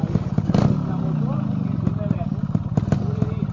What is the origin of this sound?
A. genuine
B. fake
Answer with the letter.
A